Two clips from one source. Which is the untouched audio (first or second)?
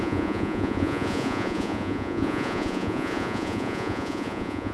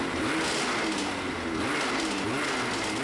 second